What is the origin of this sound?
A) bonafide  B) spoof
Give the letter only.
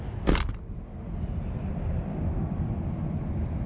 A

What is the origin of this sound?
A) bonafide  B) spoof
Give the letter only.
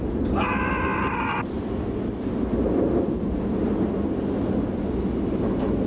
A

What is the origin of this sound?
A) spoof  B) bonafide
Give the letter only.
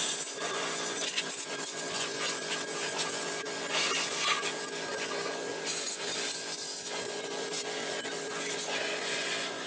A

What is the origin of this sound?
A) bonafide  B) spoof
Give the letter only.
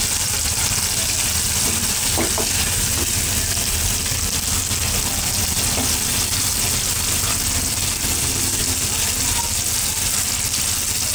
A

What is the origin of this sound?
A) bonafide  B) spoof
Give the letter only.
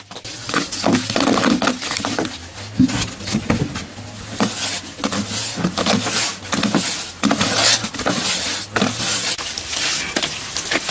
A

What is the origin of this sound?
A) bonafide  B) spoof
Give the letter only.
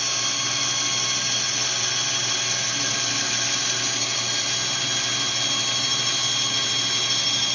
A